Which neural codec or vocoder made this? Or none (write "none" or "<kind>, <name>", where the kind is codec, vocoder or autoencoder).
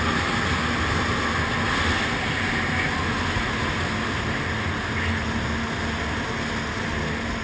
none